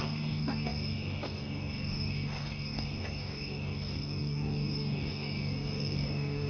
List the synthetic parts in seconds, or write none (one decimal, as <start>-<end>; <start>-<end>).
0.0-6.5